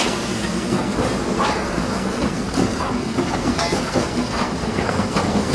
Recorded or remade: remade